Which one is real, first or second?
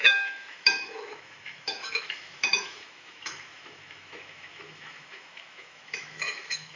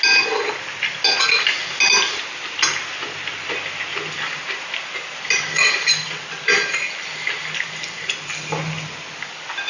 second